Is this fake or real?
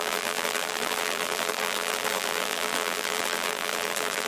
fake